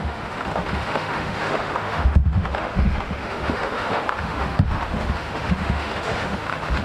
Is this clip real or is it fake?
fake